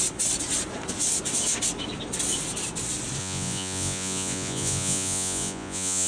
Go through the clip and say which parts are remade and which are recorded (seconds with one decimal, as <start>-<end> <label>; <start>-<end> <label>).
0.0-3.2 recorded; 3.2-6.1 remade